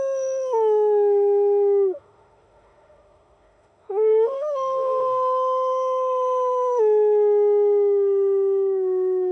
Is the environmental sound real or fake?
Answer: fake